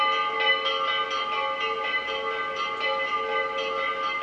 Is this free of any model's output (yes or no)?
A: yes